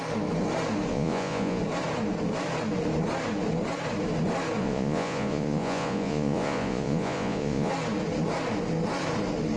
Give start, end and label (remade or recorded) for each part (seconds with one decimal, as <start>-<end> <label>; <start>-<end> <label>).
0.0-0.9 recorded; 0.9-1.6 remade; 1.6-4.6 recorded; 4.6-7.7 remade; 7.7-9.6 recorded